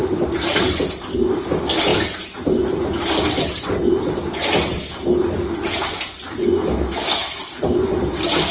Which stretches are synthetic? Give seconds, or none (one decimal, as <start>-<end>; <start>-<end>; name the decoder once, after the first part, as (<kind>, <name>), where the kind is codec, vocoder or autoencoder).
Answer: 6.4-7.4 (autoencoder, DAC-VAE)